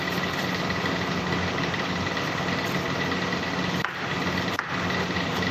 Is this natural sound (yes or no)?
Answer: yes